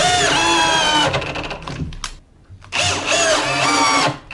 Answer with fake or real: real